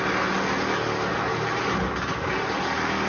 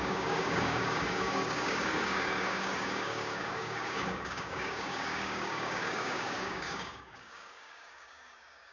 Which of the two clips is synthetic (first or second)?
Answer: second